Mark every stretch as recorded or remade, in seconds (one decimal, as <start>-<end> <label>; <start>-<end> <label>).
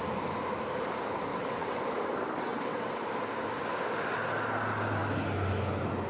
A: 0.0-1.3 recorded; 1.3-1.8 remade; 1.8-2.5 recorded; 2.5-3.0 remade; 3.0-6.1 recorded